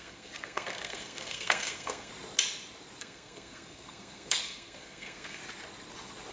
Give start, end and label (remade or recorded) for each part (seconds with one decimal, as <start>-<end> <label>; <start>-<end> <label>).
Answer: 0.0-2.1 remade; 2.1-3.0 recorded; 3.0-5.4 remade; 5.4-6.3 recorded